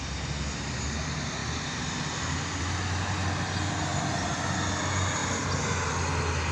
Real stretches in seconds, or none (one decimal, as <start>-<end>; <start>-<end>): 0.0-5.2; 5.9-6.5